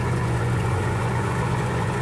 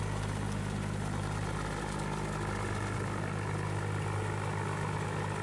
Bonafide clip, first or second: second